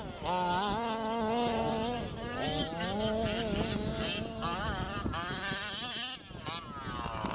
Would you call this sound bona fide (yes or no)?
yes